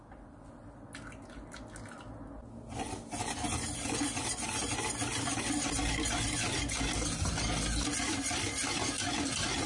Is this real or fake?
real